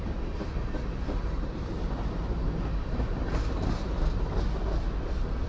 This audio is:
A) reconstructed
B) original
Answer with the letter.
B